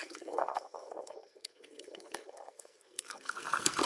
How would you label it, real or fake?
fake